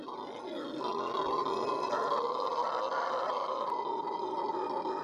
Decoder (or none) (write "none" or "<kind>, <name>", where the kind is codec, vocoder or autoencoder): none